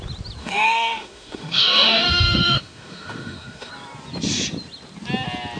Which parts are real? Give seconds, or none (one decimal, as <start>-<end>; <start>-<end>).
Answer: 0.0-0.4; 3.7-5.6